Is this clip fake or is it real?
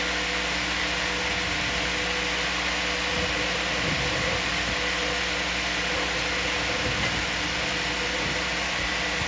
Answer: real